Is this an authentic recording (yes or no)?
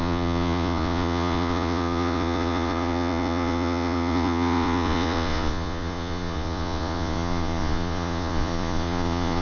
no